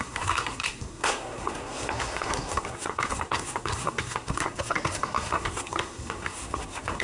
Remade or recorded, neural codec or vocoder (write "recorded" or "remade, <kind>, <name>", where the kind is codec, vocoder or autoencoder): remade, codec, SNAC